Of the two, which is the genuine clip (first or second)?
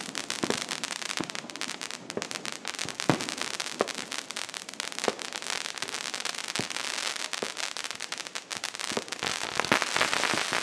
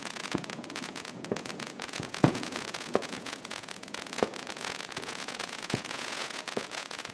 first